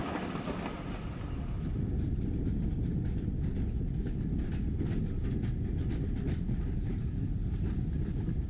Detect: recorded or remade recorded